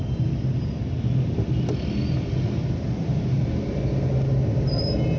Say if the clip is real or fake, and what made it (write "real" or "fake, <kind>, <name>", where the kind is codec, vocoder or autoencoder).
real